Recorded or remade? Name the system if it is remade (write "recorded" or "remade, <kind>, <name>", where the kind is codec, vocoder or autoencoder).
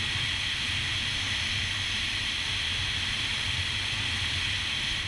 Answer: recorded